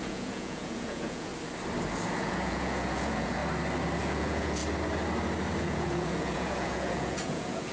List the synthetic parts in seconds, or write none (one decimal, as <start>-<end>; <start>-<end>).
0.0-1.3; 2.2-3.4; 4.0-4.6; 5.6-7.7